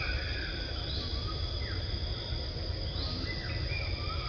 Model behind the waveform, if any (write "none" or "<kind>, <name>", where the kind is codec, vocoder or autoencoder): none